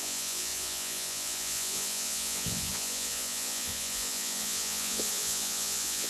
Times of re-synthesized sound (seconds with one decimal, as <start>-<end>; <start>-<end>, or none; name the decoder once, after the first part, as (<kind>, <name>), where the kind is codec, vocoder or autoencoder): 0.0-6.1 (vocoder, Vocos)